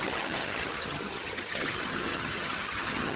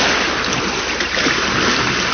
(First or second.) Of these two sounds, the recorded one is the second